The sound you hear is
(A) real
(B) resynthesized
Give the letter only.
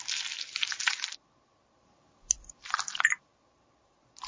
A